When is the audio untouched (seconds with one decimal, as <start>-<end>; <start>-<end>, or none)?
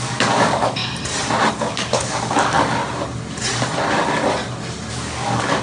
0.8-1.5; 2.8-4.9